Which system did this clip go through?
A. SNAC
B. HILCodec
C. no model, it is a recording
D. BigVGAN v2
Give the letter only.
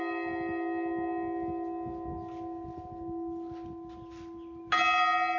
C